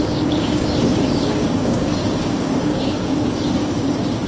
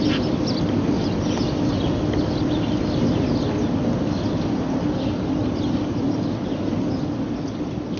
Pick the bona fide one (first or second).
second